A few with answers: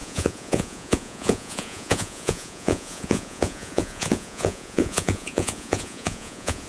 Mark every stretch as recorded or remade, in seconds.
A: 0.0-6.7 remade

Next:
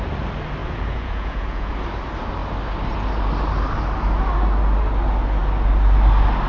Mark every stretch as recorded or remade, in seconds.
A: 0.0-0.6 recorded; 0.6-1.7 remade; 1.7-6.5 recorded

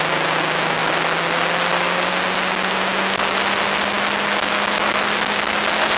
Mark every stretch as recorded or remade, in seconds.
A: 0.0-6.0 recorded

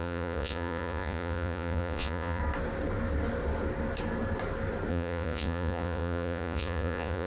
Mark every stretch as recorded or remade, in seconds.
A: 0.0-2.4 remade; 2.4-4.9 recorded; 4.9-7.3 remade

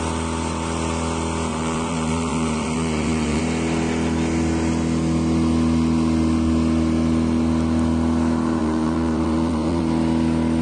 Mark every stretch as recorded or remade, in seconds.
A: 0.0-1.5 recorded; 1.5-3.4 remade; 3.4-8.6 recorded; 8.6-9.8 remade; 9.8-10.6 recorded

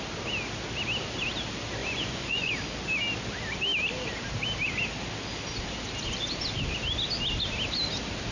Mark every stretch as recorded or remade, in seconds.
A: 0.0-1.8 recorded; 1.8-2.5 remade; 2.5-8.3 recorded

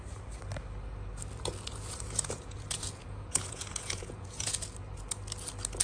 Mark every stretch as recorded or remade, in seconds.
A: 0.0-1.7 recorded; 1.7-4.5 remade; 4.5-5.8 recorded

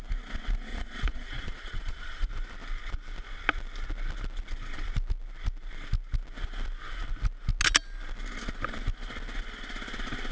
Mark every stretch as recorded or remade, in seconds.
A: 0.0-0.7 recorded; 0.7-2.3 remade; 2.3-10.3 recorded